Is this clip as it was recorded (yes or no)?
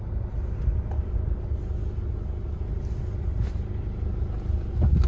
yes